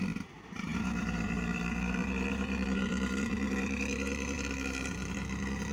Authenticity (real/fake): fake